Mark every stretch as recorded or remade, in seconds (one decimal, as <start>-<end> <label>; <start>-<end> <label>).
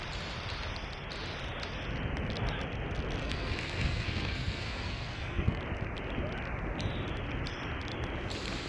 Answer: 0.0-3.2 recorded; 3.2-5.6 remade; 5.6-8.7 recorded